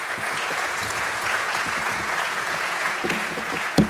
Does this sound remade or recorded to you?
remade